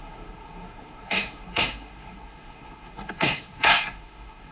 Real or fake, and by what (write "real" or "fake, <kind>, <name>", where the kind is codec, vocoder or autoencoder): fake, codec, SNAC